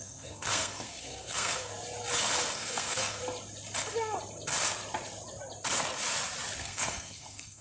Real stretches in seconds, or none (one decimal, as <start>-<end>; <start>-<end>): 1.7-2.5; 3.2-6.6